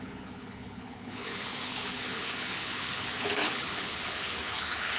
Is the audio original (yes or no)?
no